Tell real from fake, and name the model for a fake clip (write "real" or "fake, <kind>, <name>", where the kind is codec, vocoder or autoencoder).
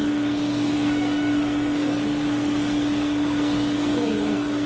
fake, codec, SNAC